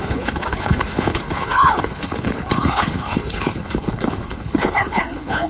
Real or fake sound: fake